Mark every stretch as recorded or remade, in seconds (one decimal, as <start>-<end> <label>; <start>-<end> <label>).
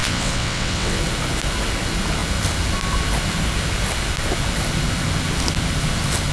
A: 0.0-1.0 remade; 1.0-6.3 recorded